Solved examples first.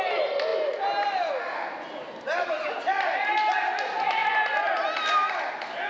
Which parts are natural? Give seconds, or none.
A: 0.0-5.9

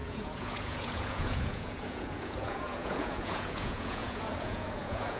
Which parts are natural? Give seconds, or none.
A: none